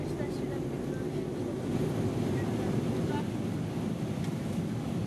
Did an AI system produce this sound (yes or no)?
no